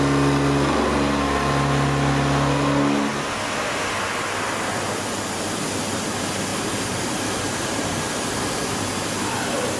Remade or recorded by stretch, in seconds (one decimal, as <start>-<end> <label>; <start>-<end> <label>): 0.0-6.5 recorded; 6.5-8.0 remade; 8.0-9.8 recorded